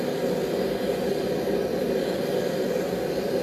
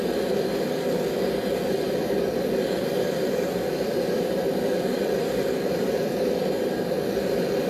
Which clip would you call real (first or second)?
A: first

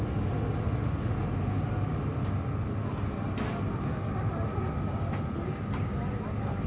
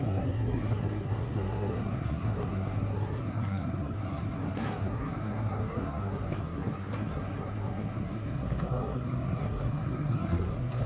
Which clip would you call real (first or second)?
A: first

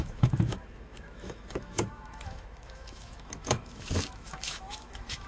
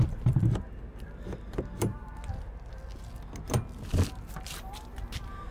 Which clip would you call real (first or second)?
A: second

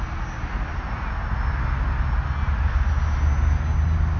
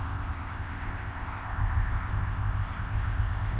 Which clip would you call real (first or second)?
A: first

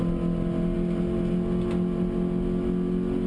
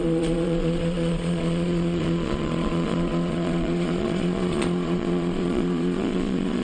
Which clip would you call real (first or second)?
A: first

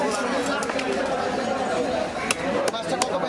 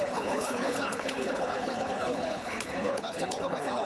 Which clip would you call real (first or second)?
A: first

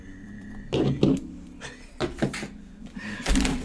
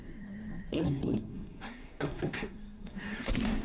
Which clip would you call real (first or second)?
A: first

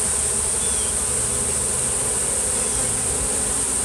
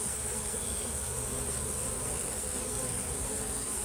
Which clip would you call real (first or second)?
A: first